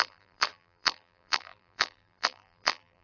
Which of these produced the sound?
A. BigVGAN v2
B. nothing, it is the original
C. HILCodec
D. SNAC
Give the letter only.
A